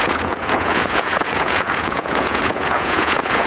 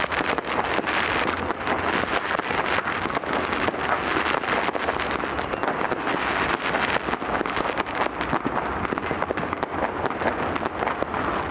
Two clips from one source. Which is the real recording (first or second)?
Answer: second